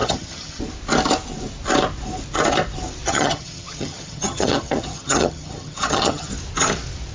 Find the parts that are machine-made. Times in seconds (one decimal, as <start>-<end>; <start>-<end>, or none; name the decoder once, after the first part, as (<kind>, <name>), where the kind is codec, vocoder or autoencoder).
0.0-0.6 (vocoder, HiFi-GAN); 3.1-6.3

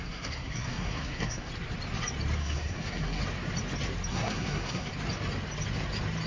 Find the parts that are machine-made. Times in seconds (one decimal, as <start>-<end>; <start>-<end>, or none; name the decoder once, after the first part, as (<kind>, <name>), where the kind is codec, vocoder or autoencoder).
0.0-1.5 (codec, SNAC); 2.4-3.2; 4.1-4.9

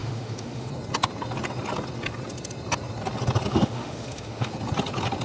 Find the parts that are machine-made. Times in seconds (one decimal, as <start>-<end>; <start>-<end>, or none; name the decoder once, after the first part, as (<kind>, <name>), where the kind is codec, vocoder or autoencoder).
0.0-0.7 (autoencoder, DAC-VAE); 3.5-4.5

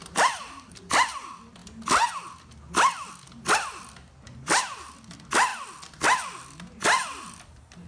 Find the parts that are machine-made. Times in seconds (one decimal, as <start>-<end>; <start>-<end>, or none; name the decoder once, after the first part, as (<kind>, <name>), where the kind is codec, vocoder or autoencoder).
none

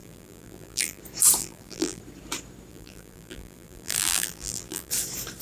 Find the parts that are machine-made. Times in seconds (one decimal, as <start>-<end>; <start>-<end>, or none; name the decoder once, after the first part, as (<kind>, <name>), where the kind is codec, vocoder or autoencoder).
0.0-1.0 (vocoder, BigVGAN v2); 1.4-2.0; 2.7-4.9

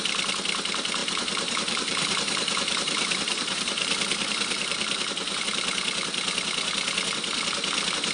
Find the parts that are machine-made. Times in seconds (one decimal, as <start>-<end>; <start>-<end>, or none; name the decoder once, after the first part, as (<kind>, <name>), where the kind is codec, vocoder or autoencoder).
1.0-5.4 (vocoder, BigVGAN v2)

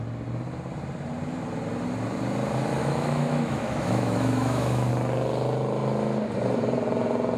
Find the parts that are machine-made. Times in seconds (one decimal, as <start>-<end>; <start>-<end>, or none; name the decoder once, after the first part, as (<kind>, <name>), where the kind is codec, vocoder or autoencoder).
2.8-4.9 (autoencoder, DAC-VAE)

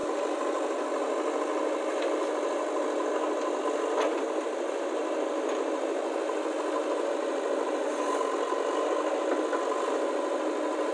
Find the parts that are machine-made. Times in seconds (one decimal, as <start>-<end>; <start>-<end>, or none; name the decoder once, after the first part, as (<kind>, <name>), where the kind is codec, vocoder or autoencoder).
none